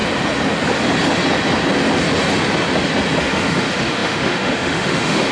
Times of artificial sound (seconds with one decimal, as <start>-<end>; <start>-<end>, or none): 3.2-5.3

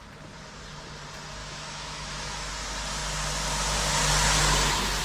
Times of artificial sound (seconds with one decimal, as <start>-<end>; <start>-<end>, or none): 1.4-2.5